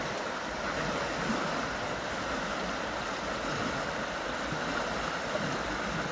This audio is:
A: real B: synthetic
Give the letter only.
A